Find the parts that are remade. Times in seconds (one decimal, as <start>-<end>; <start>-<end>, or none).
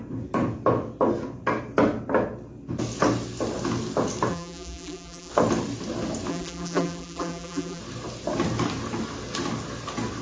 4.3-5.3; 6.3-7.8